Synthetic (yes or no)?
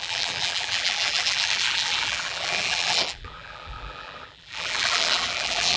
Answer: yes